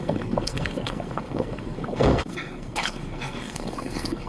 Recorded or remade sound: remade